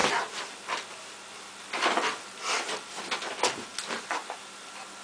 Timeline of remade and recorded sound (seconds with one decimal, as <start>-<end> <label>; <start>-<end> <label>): 0.0-5.0 recorded